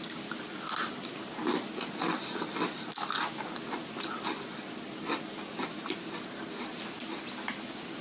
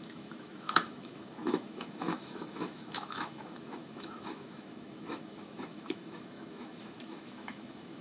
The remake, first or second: second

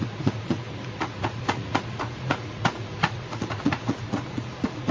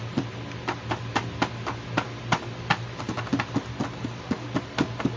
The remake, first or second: first